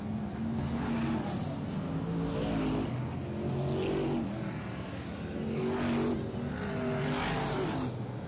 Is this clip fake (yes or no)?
no